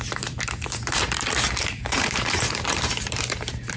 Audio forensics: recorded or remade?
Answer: remade